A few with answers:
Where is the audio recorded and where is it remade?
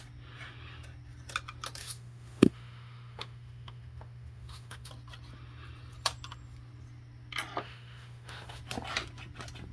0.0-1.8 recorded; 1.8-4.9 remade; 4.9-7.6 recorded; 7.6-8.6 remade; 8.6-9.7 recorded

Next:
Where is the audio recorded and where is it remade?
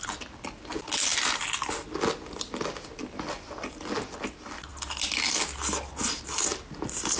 0.0-7.2 recorded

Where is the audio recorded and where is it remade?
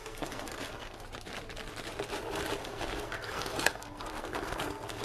0.0-1.0 remade; 1.0-2.6 recorded; 2.6-5.0 remade